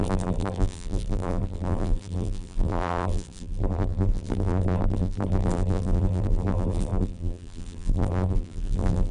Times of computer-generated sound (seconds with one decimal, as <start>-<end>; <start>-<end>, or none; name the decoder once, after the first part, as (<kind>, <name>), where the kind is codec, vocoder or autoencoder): 0.0-9.1 (vocoder, BigVGAN v2)